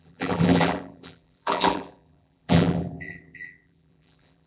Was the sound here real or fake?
fake